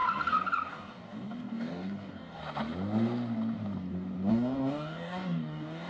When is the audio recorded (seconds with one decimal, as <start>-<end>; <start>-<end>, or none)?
0.0-0.7; 2.4-4.3